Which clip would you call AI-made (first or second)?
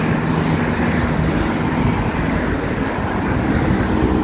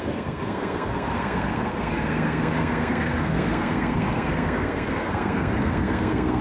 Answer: second